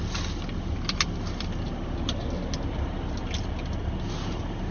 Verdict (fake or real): real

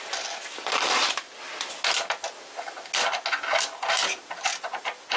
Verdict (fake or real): real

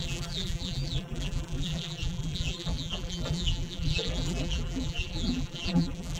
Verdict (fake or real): fake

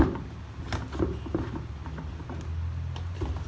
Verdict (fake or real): real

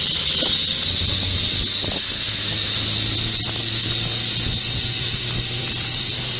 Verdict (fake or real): real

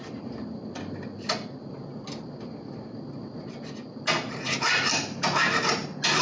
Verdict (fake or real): real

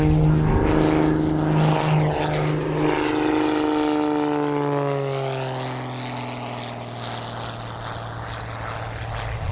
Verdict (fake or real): real